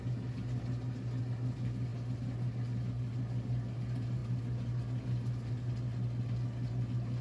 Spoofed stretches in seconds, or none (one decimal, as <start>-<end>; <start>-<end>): none

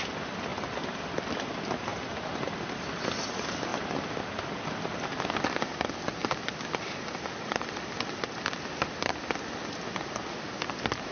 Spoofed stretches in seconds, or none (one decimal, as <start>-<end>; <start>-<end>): 0.5-1.0; 1.9-2.7; 3.7-4.2; 6.2-7.9

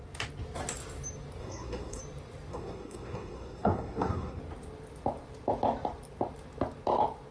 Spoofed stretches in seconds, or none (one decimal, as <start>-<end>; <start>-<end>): 1.4-2.0; 2.5-4.4